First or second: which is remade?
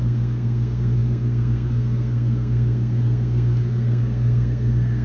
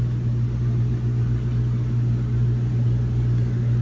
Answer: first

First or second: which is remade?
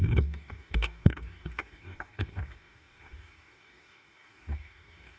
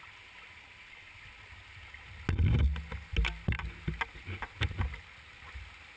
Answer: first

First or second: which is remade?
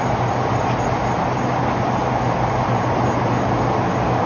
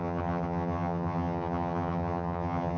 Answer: second